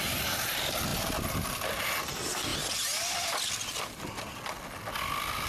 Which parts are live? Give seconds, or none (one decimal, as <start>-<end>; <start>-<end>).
0.0-5.5